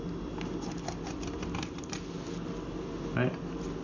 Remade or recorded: recorded